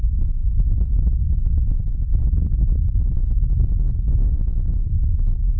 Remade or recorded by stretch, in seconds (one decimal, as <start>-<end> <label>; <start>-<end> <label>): 0.0-2.2 recorded; 2.2-3.0 remade; 3.0-4.8 recorded; 4.8-5.6 remade